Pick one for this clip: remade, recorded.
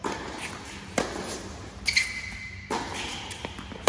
recorded